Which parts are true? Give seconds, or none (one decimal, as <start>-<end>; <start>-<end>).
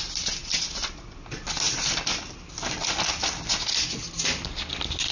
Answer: 0.0-5.1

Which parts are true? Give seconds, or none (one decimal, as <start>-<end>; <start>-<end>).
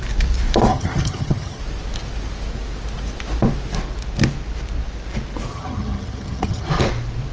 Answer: 0.0-0.7; 1.6-5.5; 6.7-7.3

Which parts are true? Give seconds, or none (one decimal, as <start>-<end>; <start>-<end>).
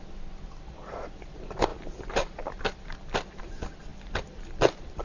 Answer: 0.0-5.0